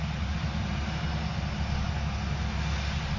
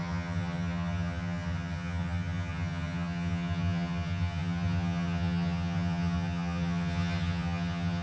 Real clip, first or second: first